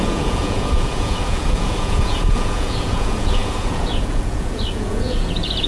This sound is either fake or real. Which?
fake